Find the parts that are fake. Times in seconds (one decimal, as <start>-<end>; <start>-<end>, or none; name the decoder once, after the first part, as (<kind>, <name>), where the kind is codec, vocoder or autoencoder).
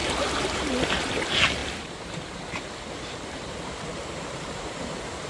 0.0-5.3 (vocoder, BigVGAN v2)